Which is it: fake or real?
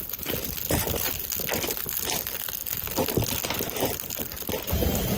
real